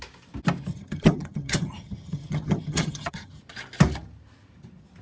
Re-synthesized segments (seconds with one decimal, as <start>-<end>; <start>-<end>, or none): 0.7-3.4

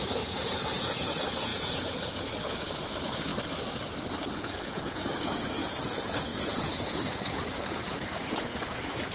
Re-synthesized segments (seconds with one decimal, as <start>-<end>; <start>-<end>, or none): 0.0-3.3; 4.3-9.1

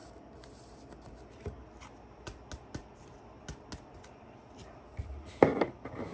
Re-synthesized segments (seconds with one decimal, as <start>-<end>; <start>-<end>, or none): none

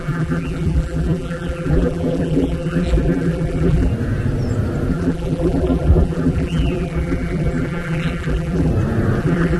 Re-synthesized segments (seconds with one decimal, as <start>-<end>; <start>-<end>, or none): 0.0-3.9; 4.9-8.7; 9.2-9.6

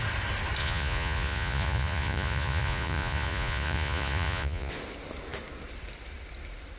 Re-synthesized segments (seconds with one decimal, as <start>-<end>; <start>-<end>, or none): 0.6-4.7

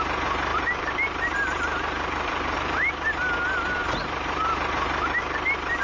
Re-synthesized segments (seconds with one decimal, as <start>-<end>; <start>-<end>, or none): 0.5-2.9